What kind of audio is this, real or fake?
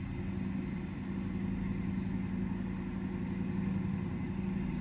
real